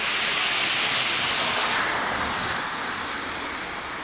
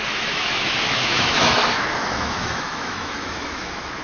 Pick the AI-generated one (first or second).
second